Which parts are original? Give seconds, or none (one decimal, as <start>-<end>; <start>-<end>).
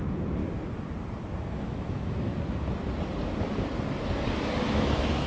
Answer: 0.4-1.5; 2.3-4.6